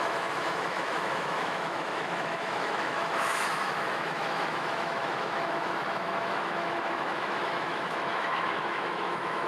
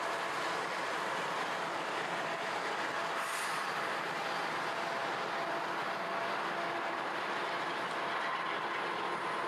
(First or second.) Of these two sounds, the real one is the second